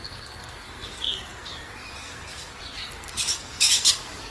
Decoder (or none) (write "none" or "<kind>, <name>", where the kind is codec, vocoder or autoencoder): codec, SNAC